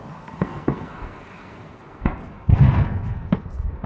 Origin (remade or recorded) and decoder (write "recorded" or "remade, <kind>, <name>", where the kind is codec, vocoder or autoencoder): remade, codec, SNAC